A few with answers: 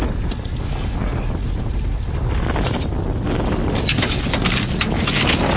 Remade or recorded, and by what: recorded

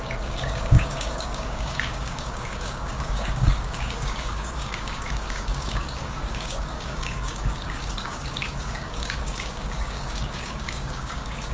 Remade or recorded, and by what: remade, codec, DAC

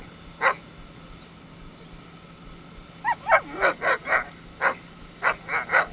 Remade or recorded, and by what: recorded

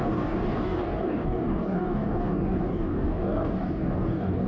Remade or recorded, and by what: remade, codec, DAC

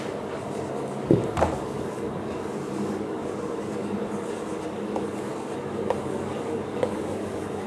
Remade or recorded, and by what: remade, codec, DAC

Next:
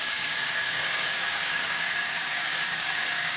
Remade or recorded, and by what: remade, codec, DAC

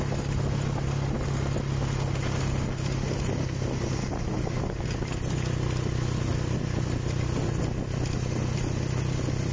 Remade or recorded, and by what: recorded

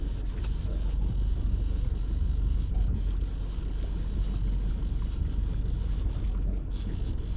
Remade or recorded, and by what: recorded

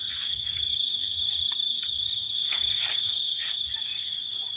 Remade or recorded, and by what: remade, codec, DAC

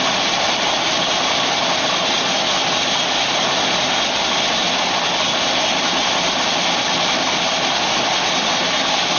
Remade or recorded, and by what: recorded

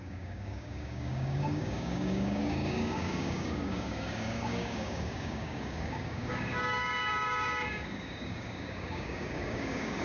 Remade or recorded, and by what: remade, codec, DAC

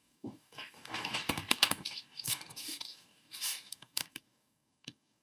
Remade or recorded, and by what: remade, codec, DAC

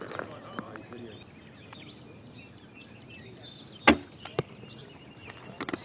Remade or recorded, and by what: recorded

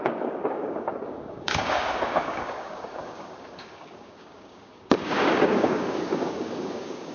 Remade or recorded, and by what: remade, codec, DAC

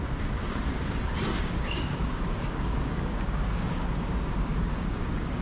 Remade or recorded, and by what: remade, codec, DAC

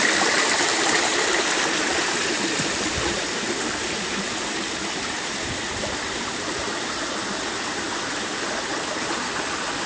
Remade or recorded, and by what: recorded